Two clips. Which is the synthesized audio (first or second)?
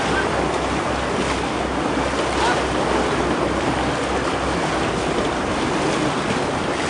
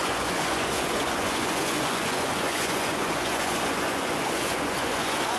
second